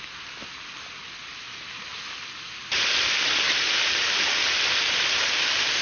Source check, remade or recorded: recorded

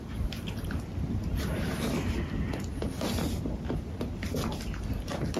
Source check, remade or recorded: recorded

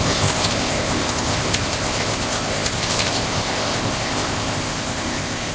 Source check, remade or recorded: remade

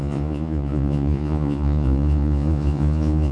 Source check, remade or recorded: remade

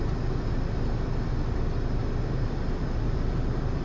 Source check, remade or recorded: recorded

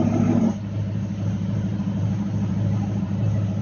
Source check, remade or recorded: remade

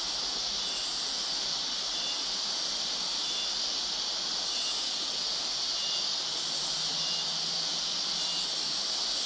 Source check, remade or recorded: recorded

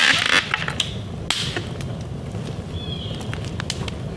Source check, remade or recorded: recorded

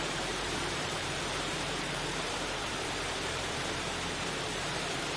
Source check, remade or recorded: remade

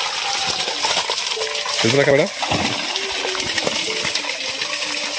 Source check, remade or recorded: recorded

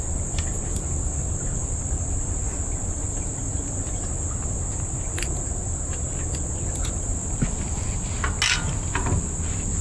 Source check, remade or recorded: recorded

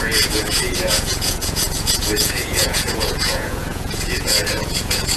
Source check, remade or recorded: remade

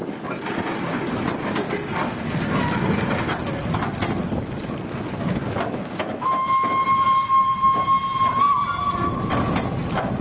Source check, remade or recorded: recorded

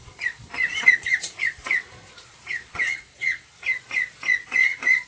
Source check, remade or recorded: remade